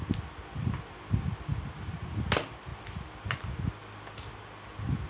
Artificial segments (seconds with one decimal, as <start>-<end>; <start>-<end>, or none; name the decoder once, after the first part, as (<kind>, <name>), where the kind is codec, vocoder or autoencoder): none